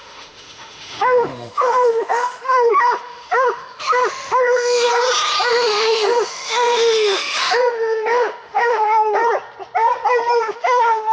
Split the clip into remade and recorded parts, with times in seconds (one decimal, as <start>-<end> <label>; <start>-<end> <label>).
0.0-4.9 remade; 4.9-5.5 recorded; 5.5-9.2 remade; 9.2-10.4 recorded; 10.4-11.1 remade